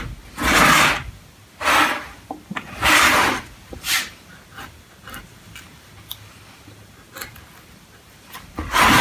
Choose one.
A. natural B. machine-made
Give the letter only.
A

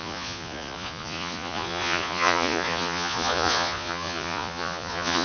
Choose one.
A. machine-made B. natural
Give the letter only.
A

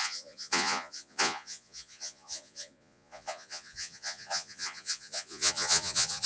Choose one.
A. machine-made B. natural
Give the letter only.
A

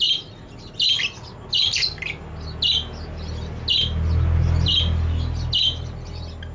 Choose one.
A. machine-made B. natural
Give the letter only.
B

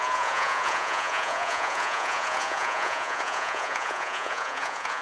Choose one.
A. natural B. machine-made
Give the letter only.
B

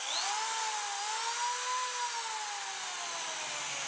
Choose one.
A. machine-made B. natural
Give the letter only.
B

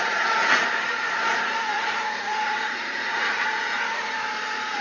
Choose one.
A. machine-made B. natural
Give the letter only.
A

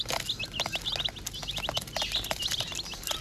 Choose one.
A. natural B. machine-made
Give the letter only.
A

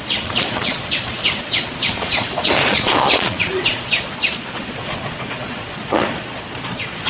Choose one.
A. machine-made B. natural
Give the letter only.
A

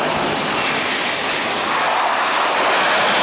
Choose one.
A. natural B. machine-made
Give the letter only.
A